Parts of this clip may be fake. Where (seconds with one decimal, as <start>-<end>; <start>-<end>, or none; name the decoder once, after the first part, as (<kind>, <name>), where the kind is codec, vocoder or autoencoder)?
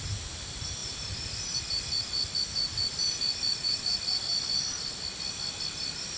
none